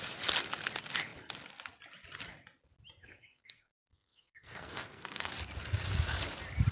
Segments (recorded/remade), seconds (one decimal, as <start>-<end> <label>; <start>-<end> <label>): 0.0-3.0 recorded; 3.0-5.3 remade; 5.3-6.7 recorded